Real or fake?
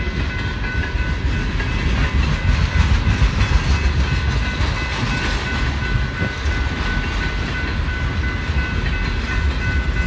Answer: real